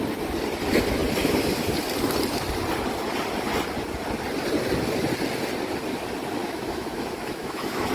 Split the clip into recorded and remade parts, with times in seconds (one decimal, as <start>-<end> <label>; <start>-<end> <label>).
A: 0.0-6.4 recorded; 6.4-7.9 remade